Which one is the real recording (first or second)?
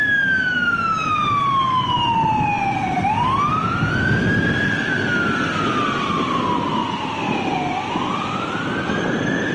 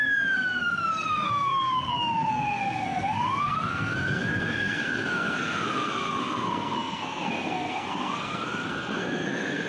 first